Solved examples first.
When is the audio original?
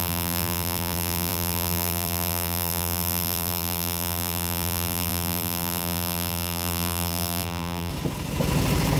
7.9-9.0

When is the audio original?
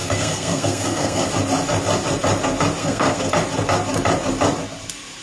1.3-2.8; 3.3-5.2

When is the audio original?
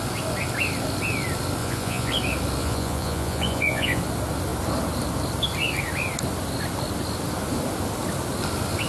0.0-1.6; 2.1-2.6; 4.0-8.9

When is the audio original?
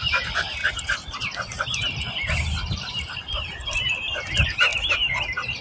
0.0-5.6